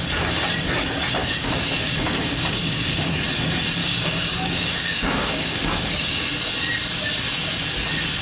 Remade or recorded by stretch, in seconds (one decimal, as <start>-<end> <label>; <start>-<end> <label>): 0.0-1.2 recorded; 1.2-3.1 remade; 3.1-3.8 recorded; 3.8-6.3 remade; 6.3-8.2 recorded